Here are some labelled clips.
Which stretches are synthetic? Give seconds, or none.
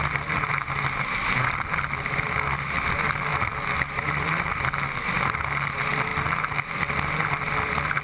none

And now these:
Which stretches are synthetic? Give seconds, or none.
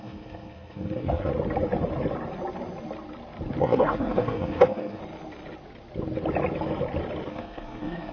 0.0-1.3 (codec, SNAC); 3.6-5.0; 7.3-8.1